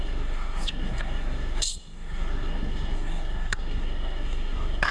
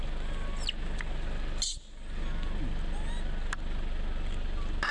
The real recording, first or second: second